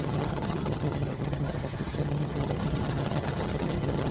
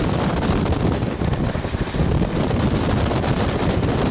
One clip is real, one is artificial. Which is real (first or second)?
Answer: second